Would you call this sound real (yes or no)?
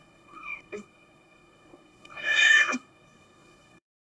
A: no